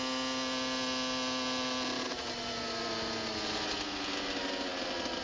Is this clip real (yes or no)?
yes